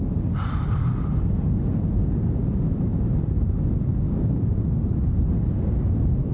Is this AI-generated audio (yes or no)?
no